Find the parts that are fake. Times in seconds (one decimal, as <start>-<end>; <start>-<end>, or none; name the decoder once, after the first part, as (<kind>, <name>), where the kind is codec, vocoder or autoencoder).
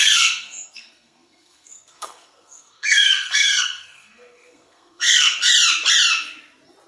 0.0-5.5 (codec, SNAC)